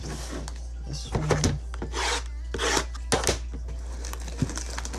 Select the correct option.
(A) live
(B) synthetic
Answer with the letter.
A